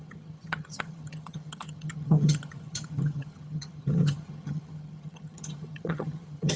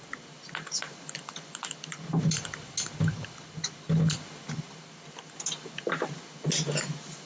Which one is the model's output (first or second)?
first